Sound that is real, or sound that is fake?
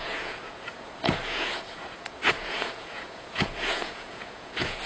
fake